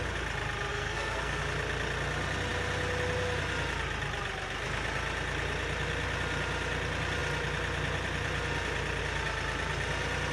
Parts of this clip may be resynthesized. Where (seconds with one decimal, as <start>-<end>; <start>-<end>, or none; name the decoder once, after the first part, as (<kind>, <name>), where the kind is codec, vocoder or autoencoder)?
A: 0.7-1.4 (codec, SNAC)